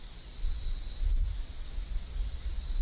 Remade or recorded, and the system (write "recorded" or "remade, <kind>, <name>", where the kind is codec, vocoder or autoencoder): recorded